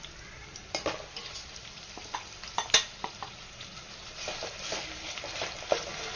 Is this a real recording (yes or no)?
yes